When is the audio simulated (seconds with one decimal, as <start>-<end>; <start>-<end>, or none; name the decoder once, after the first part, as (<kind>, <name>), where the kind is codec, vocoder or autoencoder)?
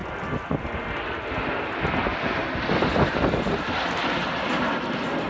none